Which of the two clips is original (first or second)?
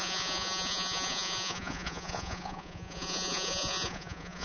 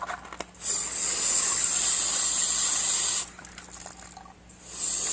second